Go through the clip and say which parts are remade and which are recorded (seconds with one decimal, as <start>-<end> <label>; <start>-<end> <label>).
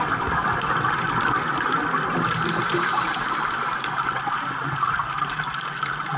0.0-6.2 recorded